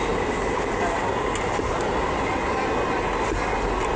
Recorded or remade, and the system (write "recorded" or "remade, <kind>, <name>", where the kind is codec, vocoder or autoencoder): recorded